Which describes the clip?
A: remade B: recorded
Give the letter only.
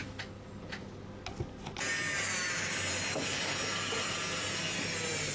B